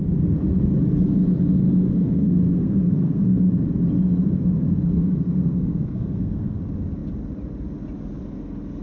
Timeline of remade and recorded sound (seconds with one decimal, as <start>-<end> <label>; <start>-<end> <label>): 0.0-2.0 recorded; 2.0-3.5 remade; 3.5-4.9 recorded; 4.9-6.6 remade; 6.6-8.8 recorded